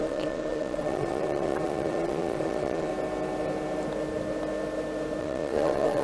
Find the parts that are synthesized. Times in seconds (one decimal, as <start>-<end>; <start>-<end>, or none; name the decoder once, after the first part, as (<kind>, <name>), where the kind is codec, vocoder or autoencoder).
0.0-2.9 (vocoder, Vocos); 5.2-6.0